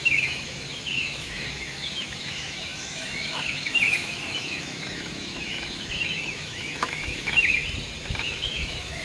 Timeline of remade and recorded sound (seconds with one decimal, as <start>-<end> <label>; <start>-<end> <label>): 0.0-7.6 remade; 7.6-8.1 recorded; 8.1-9.0 remade